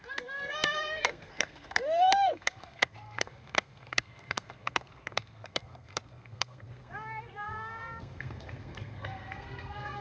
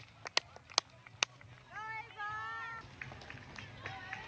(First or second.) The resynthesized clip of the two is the first